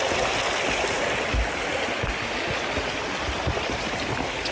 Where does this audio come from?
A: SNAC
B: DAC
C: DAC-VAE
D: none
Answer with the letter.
D